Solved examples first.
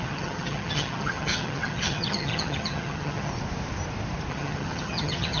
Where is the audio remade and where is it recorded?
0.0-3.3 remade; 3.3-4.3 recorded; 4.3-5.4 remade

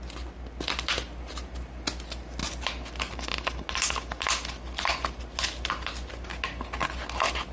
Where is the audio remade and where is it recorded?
0.0-7.5 recorded

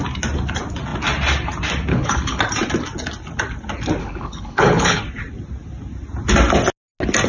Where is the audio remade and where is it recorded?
0.0-1.9 recorded; 1.9-2.4 remade; 2.4-4.0 recorded; 4.0-5.0 remade; 5.0-7.3 recorded

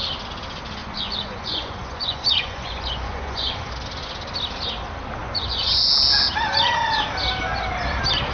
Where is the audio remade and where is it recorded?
0.0-0.8 recorded; 0.8-3.7 remade; 3.7-5.2 recorded; 5.2-5.9 remade; 5.9-8.3 recorded

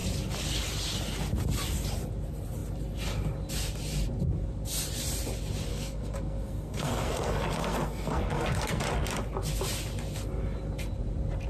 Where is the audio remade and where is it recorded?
0.0-5.7 recorded; 5.7-8.8 remade; 8.8-11.5 recorded

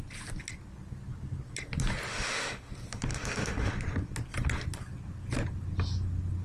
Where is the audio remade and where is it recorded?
0.0-2.1 recorded; 2.1-2.7 remade; 2.7-3.1 recorded; 3.1-3.7 remade; 3.7-6.4 recorded

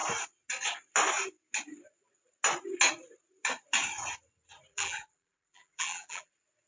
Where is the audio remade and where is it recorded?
0.0-4.7 recorded; 4.7-6.3 remade; 6.3-6.7 recorded

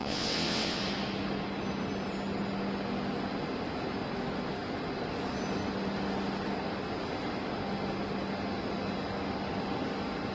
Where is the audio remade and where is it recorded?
0.0-0.8 remade; 0.8-10.3 recorded